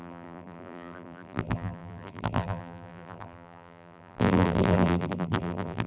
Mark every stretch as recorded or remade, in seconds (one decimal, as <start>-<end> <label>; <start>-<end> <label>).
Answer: 0.0-5.9 remade